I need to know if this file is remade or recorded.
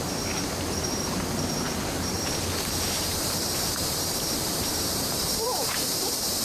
remade